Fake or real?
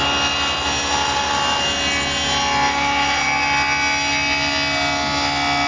real